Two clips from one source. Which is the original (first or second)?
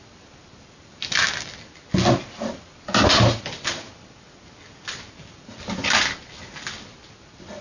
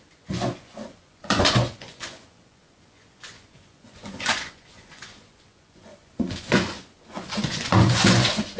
first